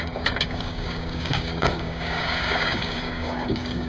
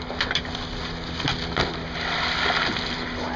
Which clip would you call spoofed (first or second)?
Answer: first